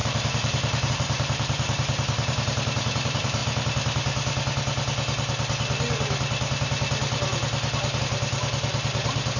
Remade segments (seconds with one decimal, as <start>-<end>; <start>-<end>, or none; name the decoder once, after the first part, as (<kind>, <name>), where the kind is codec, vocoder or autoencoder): 0.0-3.4 (vocoder, BigVGAN v2); 8.0-9.4